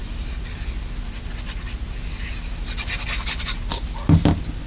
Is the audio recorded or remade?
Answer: recorded